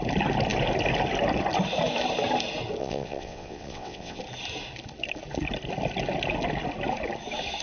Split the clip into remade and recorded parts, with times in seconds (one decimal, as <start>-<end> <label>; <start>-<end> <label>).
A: 0.0-2.8 recorded; 2.8-4.2 remade; 4.2-7.6 recorded